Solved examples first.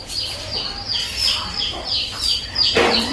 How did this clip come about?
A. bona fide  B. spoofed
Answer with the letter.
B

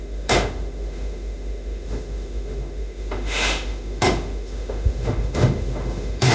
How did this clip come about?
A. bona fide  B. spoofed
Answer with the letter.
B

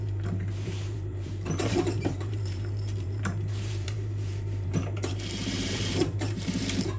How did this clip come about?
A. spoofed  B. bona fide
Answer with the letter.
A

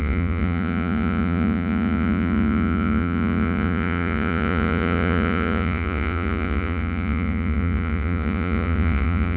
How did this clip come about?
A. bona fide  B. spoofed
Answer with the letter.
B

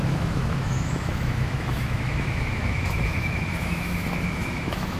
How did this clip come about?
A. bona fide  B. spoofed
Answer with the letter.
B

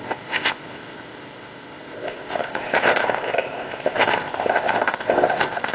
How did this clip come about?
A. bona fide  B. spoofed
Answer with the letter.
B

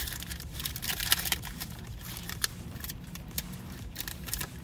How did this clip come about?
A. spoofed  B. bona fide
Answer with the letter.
A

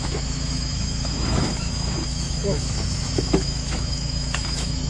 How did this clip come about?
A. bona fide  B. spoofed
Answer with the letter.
B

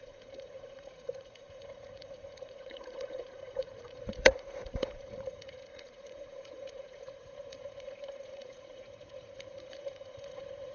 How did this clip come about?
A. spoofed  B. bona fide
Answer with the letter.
A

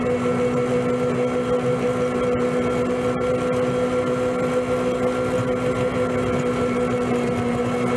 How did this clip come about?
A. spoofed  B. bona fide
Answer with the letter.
B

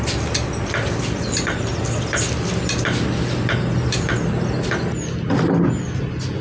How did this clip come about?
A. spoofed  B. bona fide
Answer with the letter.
B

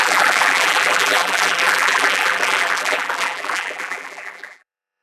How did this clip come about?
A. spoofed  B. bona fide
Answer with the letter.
A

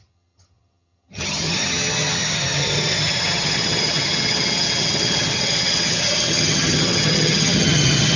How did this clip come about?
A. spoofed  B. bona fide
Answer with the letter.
A